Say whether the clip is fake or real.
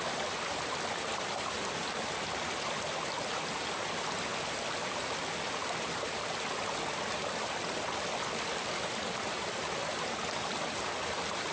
real